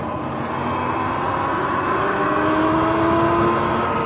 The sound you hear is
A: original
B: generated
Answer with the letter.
A